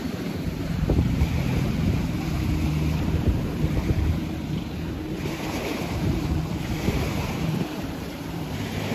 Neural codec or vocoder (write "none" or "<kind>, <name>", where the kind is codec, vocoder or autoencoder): vocoder, BigVGAN v2